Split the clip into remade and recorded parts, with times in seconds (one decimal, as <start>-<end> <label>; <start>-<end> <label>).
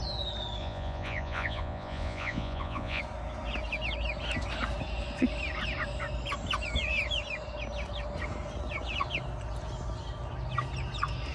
0.0-0.6 recorded; 0.6-3.0 remade; 3.0-11.3 recorded